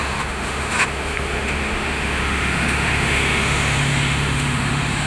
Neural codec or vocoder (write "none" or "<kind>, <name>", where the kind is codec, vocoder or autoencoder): autoencoder, DAC-VAE